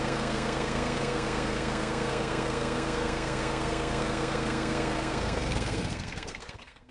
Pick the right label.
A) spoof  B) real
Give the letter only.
A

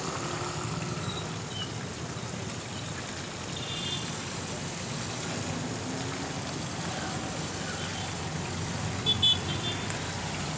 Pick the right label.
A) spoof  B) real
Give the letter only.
B